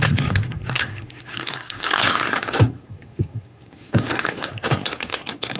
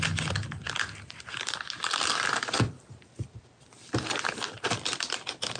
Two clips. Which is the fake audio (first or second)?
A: first